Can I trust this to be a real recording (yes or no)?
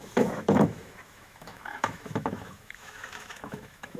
no